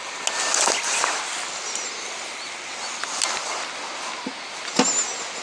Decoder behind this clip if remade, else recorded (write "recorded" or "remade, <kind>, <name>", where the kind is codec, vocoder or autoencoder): recorded